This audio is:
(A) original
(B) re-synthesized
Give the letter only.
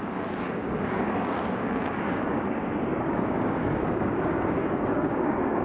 B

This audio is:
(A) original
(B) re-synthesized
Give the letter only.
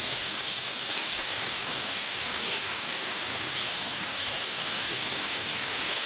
B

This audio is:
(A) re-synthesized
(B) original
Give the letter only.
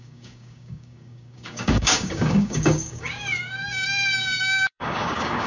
A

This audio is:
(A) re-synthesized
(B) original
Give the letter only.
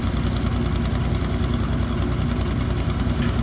B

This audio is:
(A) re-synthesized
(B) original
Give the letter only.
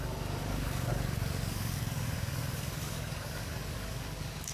A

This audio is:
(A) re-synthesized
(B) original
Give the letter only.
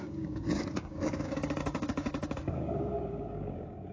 A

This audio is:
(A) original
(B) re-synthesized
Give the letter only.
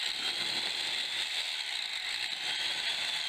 A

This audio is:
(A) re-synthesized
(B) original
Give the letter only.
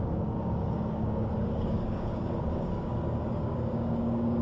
A